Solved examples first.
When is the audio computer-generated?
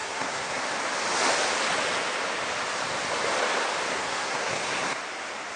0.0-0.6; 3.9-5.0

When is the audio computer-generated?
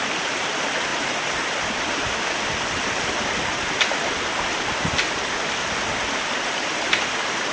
0.9-3.7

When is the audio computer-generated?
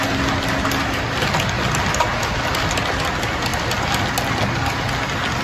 none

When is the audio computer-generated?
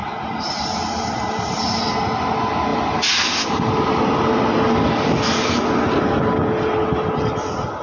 0.0-1.8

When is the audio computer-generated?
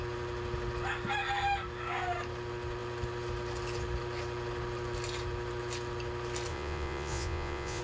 6.5-7.8